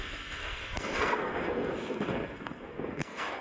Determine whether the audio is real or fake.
fake